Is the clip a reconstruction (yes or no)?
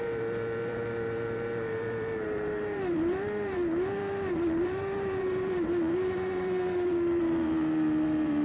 yes